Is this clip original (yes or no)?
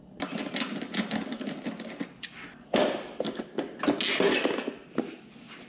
yes